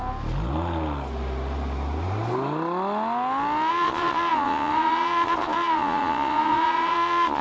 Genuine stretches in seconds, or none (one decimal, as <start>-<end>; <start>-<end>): 0.0-3.7